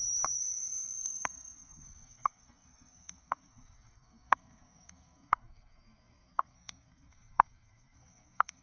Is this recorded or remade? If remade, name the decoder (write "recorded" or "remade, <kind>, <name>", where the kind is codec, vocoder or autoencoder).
remade, codec, SNAC